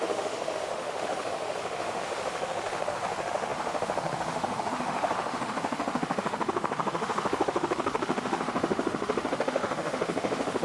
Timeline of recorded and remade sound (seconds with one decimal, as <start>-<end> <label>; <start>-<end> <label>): 0.0-10.6 remade